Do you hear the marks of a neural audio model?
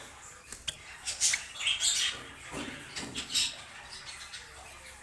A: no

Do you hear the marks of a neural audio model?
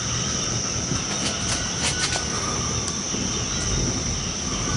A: no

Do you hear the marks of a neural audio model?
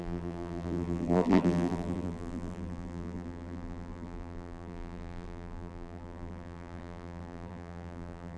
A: yes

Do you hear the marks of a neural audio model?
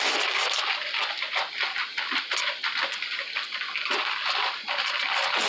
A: yes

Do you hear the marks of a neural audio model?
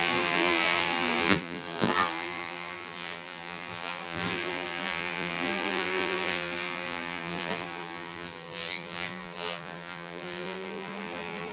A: yes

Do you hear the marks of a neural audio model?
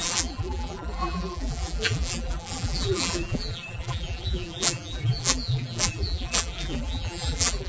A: yes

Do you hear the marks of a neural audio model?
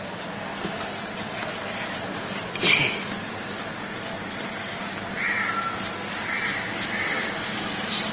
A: no